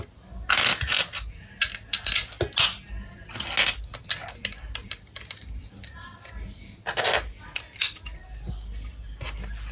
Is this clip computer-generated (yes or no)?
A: no